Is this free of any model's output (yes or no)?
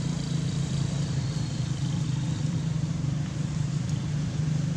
no